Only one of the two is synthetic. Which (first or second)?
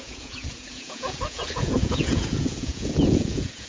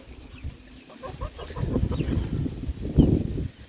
first